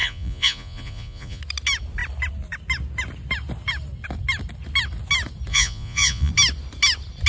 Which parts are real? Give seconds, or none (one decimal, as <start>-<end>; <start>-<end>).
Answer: 1.4-5.5; 6.3-7.3

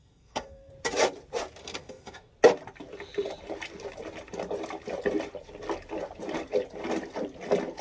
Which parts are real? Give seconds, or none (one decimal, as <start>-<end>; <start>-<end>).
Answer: 0.7-1.6; 2.3-7.8